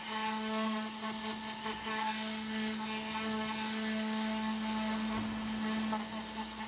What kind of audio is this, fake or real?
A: real